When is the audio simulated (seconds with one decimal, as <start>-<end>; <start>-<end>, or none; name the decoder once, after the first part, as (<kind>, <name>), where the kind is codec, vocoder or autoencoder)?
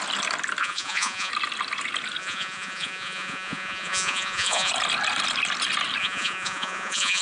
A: 0.6-1.3 (vocoder, Vocos); 2.2-4.7; 6.0-7.2